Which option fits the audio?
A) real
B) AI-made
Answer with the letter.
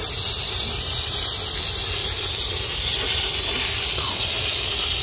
A